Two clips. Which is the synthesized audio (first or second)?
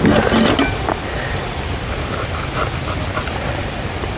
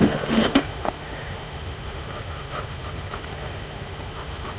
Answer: second